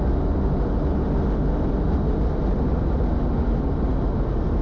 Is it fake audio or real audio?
real